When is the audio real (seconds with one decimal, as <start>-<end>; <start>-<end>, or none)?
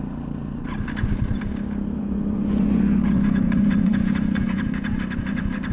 0.0-2.0